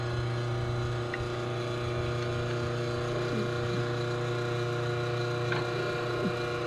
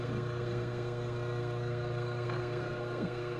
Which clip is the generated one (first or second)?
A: second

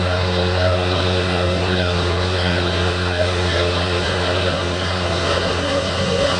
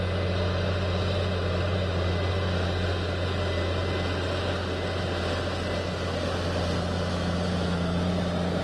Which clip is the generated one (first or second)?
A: first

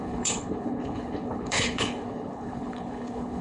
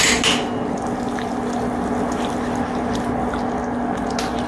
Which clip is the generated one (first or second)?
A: first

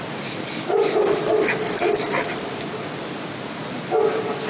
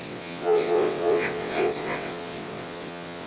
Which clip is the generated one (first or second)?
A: second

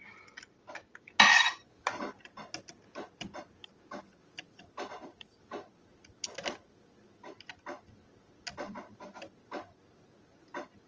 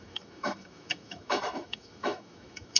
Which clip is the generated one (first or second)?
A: second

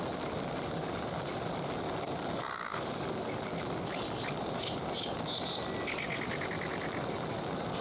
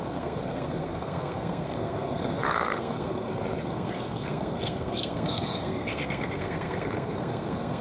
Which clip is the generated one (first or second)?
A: second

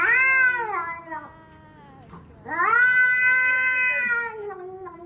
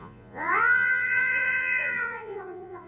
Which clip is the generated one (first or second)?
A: second